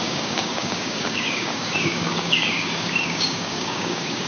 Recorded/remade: remade